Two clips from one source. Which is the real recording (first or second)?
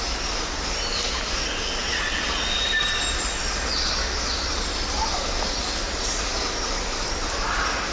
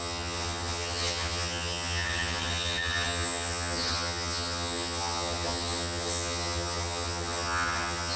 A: first